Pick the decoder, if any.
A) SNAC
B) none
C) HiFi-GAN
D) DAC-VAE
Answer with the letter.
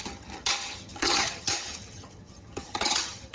C